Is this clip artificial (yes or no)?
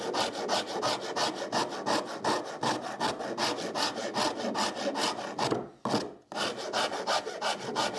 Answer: no